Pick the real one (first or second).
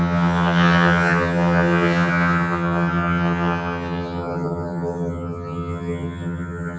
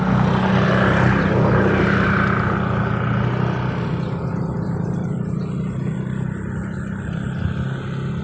second